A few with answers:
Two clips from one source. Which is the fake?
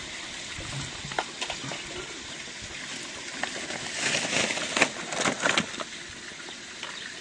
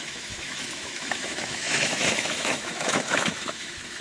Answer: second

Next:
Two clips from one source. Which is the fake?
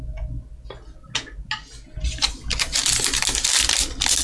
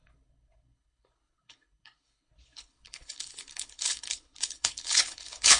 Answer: second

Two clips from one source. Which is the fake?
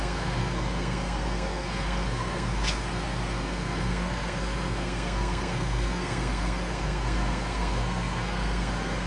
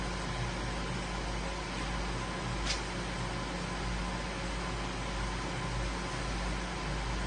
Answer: first